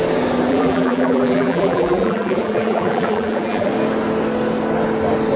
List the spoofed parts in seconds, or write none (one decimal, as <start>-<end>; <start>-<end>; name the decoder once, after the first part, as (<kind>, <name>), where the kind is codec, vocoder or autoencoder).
0.5-3.7 (vocoder, BigVGAN v2)